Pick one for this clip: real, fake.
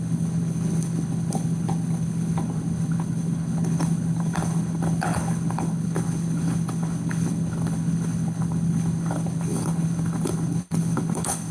fake